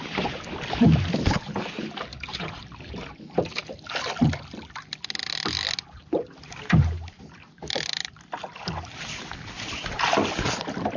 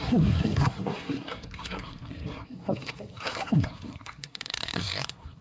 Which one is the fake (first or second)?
second